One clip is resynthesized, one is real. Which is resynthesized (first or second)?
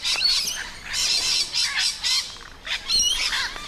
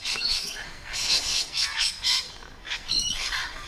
second